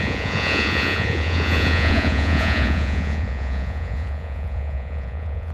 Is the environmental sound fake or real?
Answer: fake